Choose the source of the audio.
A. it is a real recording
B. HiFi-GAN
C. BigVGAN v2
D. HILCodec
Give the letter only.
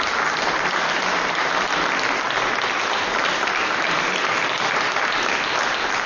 A